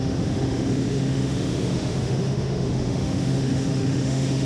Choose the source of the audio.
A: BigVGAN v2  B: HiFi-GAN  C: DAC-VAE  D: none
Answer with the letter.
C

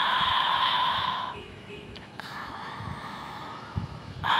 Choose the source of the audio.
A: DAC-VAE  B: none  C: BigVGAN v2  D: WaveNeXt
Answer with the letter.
A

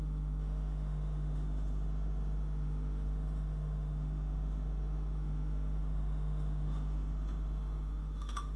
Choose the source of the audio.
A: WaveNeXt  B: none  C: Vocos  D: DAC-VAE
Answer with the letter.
D